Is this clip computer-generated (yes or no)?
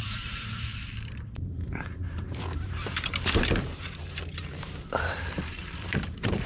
yes